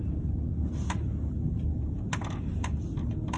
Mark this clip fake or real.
real